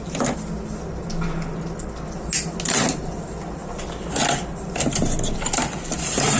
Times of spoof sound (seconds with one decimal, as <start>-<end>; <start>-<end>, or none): none